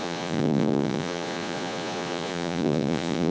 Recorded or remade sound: remade